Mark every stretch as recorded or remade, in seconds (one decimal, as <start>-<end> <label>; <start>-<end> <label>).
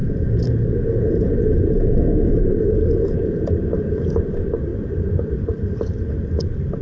0.0-4.1 remade; 4.1-4.7 recorded; 4.7-6.1 remade; 6.1-6.8 recorded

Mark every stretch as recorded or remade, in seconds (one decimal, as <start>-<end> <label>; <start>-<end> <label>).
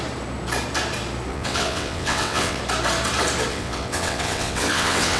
0.0-1.3 recorded; 1.3-2.6 remade; 2.6-3.5 recorded; 3.5-5.2 remade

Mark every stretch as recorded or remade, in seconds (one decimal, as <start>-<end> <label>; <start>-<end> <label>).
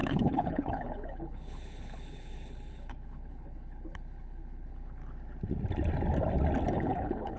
0.0-5.0 remade; 5.0-6.7 recorded; 6.7-7.4 remade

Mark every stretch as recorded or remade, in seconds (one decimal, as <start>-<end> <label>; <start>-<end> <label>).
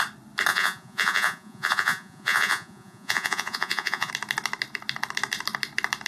0.0-0.5 recorded; 0.5-4.1 remade; 4.1-6.1 recorded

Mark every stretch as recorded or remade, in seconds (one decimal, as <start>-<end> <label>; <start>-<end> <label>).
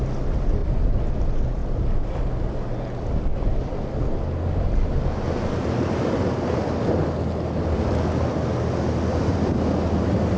0.0-1.6 recorded; 1.6-2.3 remade; 2.3-10.4 recorded